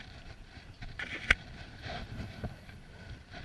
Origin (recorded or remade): remade